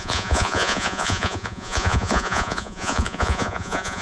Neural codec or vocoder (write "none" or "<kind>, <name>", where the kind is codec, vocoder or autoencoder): vocoder, Vocos